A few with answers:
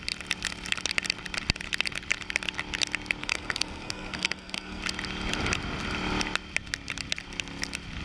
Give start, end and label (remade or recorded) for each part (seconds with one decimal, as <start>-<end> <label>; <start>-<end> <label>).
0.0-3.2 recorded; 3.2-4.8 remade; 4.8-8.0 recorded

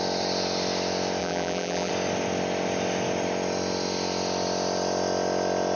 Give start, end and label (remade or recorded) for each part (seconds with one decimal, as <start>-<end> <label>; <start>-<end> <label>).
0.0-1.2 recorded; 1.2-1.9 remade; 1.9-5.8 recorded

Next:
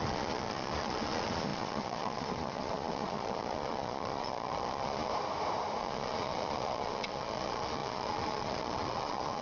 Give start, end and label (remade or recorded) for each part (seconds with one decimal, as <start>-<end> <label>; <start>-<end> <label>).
0.0-5.1 remade; 5.1-5.8 recorded; 5.8-9.4 remade

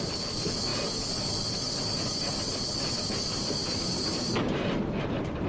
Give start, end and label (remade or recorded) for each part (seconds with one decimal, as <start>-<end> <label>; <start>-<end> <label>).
0.0-5.5 recorded

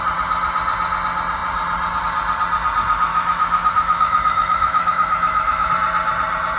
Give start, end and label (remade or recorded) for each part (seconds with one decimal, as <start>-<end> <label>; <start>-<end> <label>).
0.0-3.1 recorded; 3.1-5.7 remade; 5.7-6.6 recorded